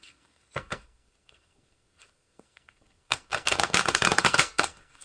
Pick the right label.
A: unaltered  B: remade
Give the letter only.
B